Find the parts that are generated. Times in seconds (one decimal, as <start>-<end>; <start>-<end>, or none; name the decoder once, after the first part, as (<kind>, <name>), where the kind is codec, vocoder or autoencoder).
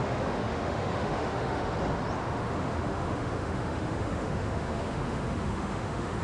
0.0-1.7 (autoencoder, DAC-VAE); 2.2-6.2